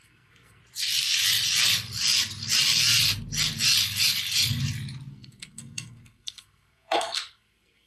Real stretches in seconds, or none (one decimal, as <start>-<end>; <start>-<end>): 0.6-5.1